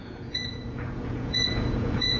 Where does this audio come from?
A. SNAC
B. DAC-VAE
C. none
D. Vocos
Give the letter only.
D